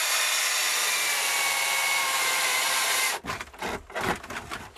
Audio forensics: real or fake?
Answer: fake